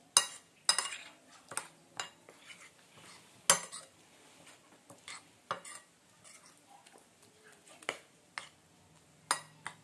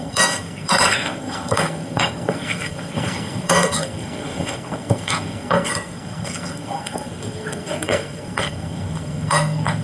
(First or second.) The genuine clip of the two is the first